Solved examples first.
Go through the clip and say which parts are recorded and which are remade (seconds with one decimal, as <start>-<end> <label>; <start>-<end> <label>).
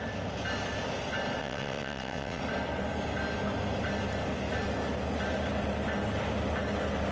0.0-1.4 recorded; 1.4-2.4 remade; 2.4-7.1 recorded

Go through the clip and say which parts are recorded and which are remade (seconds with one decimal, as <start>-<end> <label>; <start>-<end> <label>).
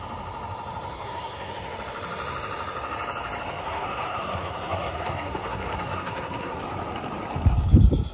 0.0-0.9 recorded; 0.9-1.5 remade; 1.5-3.6 recorded; 3.6-6.6 remade; 6.6-8.1 recorded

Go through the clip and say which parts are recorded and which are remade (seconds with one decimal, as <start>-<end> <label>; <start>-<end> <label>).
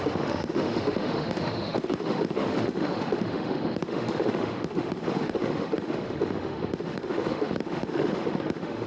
0.0-8.9 remade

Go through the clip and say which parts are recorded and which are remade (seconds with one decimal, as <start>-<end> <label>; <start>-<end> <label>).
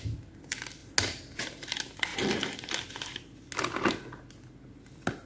0.0-5.3 recorded